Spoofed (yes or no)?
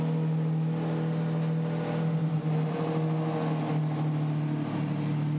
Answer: no